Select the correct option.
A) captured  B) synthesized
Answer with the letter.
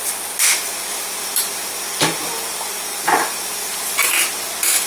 A